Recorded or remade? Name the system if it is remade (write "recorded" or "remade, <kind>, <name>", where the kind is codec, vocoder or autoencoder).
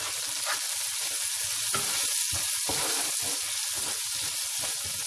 recorded